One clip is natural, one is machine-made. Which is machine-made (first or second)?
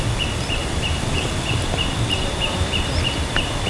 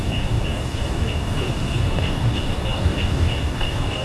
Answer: second